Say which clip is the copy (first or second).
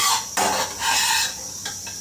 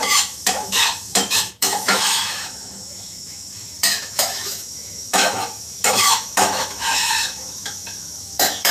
second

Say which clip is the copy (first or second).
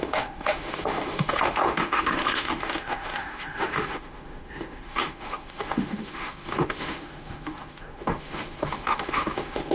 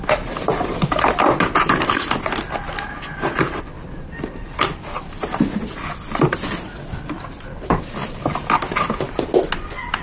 first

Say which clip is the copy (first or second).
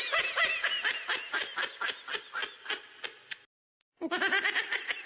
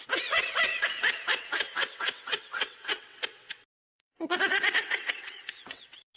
second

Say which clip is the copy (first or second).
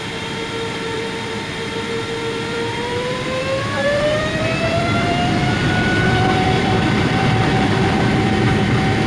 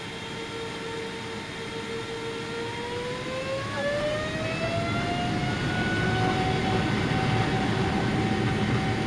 first